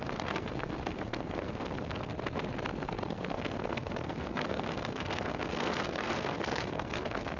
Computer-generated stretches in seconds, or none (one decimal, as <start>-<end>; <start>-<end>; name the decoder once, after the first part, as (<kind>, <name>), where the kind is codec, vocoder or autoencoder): 0.0-2.1 (codec, SNAC); 2.8-7.4

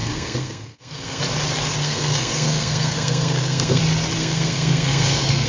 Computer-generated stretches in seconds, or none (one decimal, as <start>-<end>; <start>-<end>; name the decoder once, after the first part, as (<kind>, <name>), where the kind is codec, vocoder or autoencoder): 0.0-1.2 (codec, SNAC); 1.8-3.8; 4.2-5.5

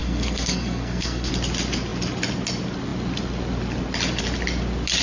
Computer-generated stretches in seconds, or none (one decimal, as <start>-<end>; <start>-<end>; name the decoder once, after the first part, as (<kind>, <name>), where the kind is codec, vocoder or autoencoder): 0.0-1.3 (codec, SNAC)

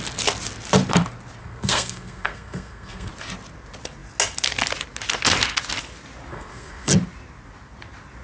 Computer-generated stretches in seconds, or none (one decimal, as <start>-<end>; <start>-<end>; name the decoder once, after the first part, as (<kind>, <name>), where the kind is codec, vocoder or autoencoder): 1.4-3.1 (codec, SNAC); 6.3-6.9

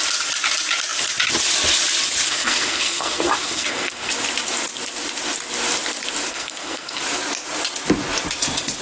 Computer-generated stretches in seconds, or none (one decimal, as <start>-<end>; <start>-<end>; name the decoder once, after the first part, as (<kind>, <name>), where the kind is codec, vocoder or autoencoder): 2.3-4.1 (codec, SNAC); 6.3-7.0

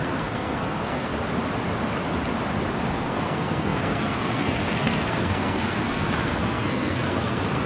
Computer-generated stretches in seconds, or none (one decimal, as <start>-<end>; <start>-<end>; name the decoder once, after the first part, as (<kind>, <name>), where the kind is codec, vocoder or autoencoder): 0.0-1.1 (codec, SNAC); 2.9-7.7

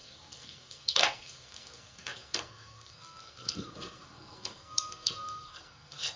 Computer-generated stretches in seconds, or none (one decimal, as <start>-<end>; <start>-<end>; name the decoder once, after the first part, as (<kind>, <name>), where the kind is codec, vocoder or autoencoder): 0.0-6.2 (codec, SNAC)

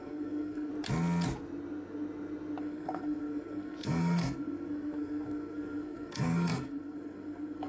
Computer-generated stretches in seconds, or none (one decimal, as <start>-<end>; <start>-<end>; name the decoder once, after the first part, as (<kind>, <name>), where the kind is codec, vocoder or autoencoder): 0.0-0.7 (codec, SNAC); 2.6-7.7